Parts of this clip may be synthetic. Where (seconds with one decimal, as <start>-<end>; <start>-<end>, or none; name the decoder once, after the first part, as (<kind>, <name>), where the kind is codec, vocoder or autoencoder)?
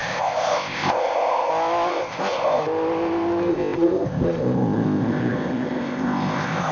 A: 0.0-1.5 (codec, ZipCodec); 1.9-2.6; 3.5-6.7